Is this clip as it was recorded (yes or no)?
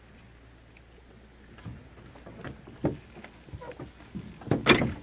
yes